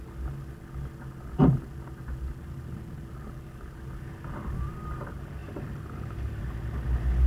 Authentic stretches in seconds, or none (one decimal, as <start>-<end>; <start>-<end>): 0.0-5.4; 6.4-7.3